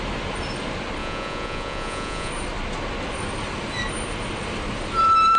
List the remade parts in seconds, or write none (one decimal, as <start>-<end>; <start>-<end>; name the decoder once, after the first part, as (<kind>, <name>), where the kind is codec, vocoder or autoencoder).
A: 1.0-2.3 (vocoder, Vocos)